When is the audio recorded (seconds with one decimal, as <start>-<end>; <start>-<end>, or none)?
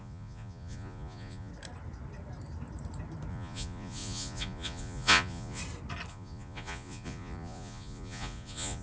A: 1.5-3.3; 5.6-6.1